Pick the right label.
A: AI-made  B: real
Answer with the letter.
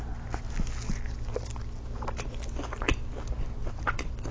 B